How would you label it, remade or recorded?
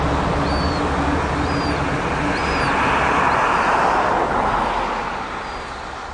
recorded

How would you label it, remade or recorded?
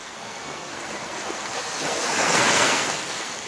remade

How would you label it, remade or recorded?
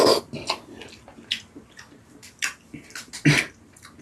recorded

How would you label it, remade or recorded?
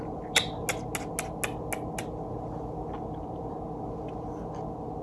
recorded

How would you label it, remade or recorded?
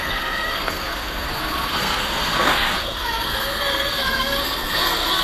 remade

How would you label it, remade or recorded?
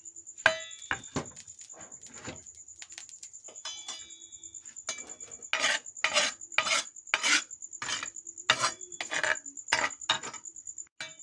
recorded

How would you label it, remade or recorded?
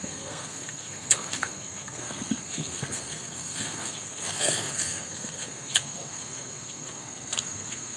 remade